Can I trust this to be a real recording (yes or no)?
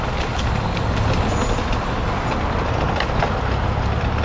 yes